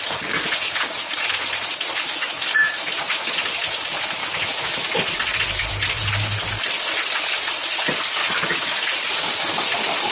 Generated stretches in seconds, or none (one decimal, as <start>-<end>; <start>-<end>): 2.1-2.9; 4.2-4.8; 8.2-8.8